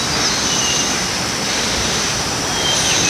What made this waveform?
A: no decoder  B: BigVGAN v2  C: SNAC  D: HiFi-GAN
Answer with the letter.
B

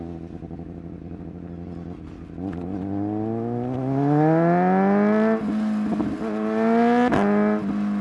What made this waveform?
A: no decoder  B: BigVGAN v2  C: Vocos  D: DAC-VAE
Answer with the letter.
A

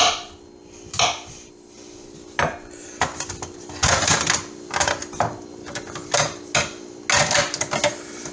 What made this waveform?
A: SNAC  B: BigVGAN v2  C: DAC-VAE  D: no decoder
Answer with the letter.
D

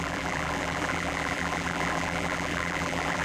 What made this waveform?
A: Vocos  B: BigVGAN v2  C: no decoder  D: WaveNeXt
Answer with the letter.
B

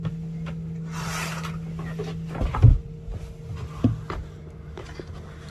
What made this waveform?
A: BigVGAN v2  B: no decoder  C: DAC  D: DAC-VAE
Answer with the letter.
B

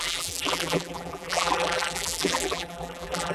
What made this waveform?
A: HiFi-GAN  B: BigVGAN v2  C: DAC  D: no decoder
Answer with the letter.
B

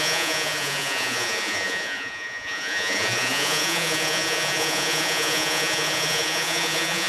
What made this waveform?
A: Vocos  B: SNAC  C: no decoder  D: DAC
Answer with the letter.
A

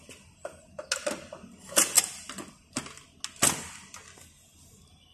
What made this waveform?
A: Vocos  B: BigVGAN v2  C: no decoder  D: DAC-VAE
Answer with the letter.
C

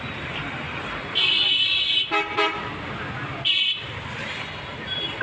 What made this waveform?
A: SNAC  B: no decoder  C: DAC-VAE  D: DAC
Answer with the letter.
B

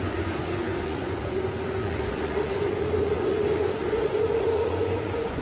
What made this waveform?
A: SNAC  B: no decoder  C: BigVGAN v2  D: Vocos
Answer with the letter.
D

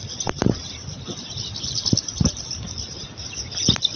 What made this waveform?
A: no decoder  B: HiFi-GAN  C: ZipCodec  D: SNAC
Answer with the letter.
A